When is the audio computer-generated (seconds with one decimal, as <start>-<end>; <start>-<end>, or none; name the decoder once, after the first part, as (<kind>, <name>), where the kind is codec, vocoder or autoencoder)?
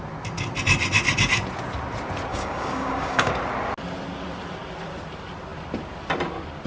2.3-3.3 (codec, DAC)